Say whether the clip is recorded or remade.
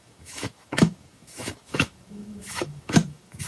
remade